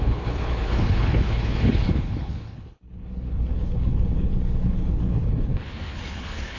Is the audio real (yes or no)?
no